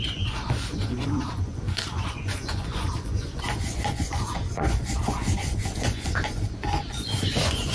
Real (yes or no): no